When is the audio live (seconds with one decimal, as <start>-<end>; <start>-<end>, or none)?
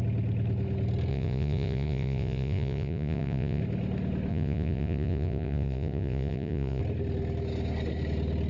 0.0-1.1; 3.6-4.3; 6.8-8.5